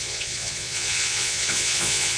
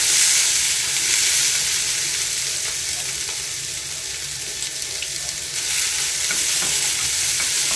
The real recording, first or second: second